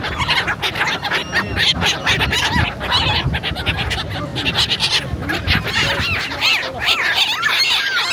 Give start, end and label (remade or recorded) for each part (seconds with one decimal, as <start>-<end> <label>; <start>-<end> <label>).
0.0-8.1 recorded